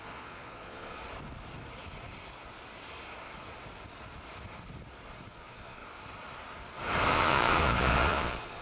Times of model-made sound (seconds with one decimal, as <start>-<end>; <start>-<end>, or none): 0.0-1.0; 5.3-5.8; 7.1-8.6